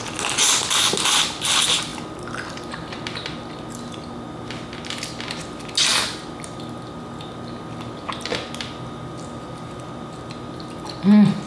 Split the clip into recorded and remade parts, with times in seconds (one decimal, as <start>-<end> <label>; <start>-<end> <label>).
0.0-11.5 recorded